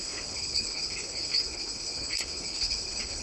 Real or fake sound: fake